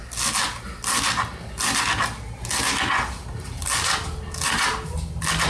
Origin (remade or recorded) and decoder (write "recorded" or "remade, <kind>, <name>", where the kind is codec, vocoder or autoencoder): recorded